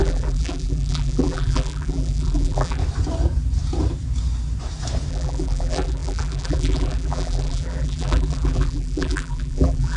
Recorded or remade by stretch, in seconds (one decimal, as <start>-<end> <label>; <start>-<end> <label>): 0.0-2.8 remade; 2.8-5.1 recorded; 5.1-10.0 remade